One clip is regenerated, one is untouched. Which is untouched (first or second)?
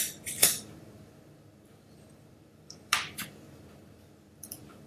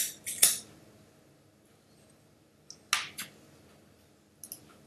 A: second